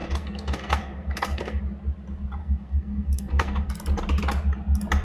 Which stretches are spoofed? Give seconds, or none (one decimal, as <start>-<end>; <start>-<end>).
0.0-1.6; 2.4-3.7